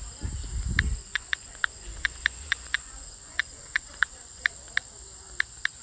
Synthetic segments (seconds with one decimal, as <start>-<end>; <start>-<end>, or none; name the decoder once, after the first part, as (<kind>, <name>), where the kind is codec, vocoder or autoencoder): 1.0-4.5 (vocoder, Vocos)